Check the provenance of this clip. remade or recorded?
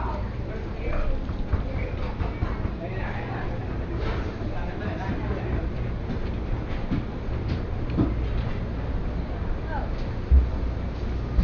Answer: recorded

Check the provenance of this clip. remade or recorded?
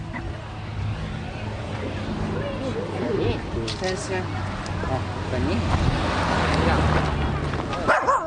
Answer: recorded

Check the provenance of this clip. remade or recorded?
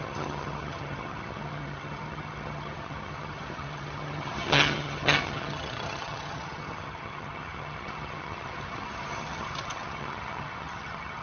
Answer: remade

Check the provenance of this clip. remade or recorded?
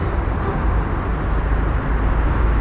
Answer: recorded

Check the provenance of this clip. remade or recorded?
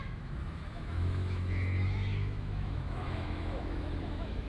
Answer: remade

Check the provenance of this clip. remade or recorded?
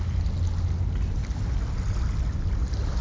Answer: recorded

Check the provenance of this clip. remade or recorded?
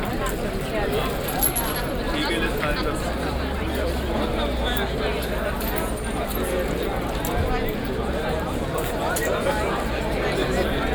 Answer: recorded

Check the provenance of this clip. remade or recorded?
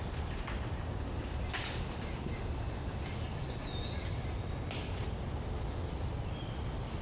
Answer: recorded